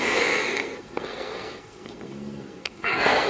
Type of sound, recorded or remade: remade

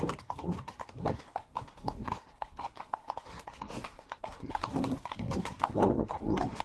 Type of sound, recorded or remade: remade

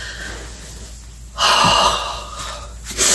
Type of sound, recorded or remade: recorded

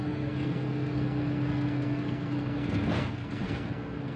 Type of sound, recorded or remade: remade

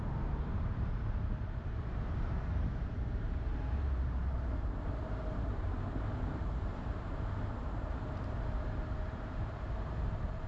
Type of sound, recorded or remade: remade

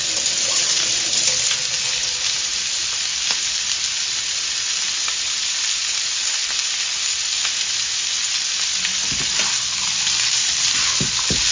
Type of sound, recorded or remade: recorded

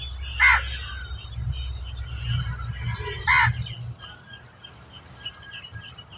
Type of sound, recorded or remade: recorded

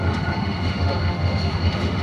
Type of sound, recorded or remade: remade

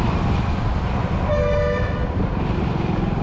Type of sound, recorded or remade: recorded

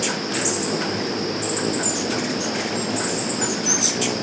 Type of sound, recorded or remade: recorded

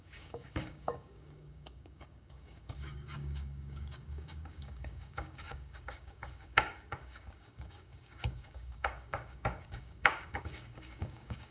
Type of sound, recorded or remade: remade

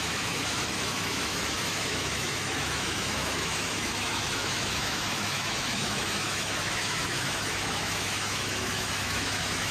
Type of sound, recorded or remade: remade